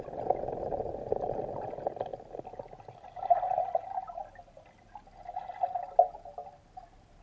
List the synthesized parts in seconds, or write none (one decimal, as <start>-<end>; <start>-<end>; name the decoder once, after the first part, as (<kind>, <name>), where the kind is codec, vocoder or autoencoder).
none